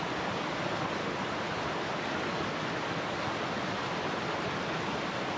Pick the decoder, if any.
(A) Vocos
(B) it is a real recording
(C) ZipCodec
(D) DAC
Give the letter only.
B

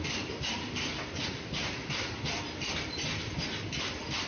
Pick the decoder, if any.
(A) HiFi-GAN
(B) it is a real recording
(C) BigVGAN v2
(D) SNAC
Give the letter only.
B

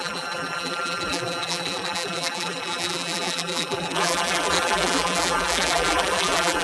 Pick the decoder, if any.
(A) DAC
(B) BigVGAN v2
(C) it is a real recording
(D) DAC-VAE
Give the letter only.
B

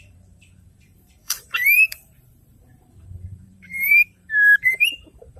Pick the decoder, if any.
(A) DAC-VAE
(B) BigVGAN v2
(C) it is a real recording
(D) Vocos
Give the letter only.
B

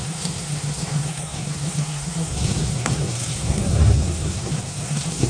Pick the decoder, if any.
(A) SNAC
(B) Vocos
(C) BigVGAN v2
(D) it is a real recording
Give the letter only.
A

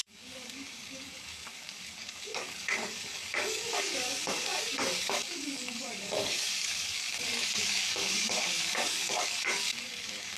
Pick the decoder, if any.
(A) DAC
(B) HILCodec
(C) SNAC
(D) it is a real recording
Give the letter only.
A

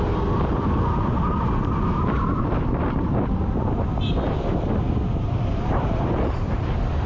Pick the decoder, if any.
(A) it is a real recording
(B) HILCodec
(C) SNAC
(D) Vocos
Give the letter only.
A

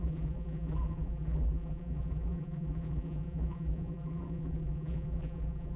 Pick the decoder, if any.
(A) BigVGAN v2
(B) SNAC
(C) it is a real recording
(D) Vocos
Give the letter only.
A